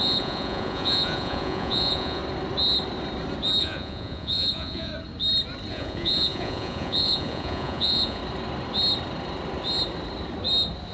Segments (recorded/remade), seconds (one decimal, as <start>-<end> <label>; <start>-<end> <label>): 0.0-2.2 remade; 2.2-3.6 recorded; 3.6-4.9 remade; 4.9-5.7 recorded; 5.7-8.2 remade; 8.2-10.9 recorded